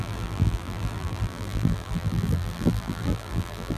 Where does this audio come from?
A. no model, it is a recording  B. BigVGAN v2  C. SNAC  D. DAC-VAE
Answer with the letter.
B